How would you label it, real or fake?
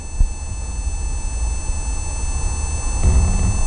real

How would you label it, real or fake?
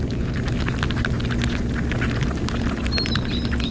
real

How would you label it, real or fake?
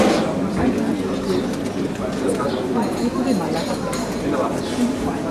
real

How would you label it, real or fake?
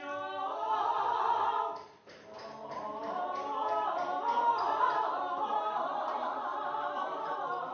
real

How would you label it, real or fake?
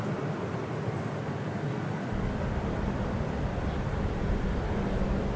real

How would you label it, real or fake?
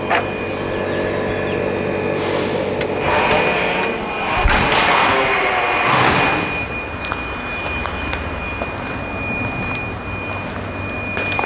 real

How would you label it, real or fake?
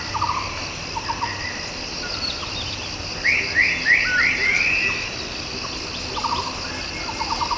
real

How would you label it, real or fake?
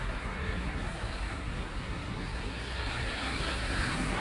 fake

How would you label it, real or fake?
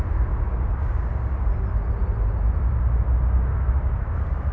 real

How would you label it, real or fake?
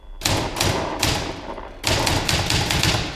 real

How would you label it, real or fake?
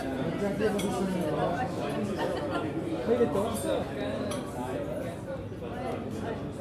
real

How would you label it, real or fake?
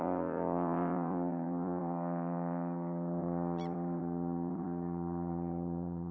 fake